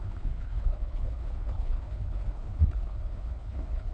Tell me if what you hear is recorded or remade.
remade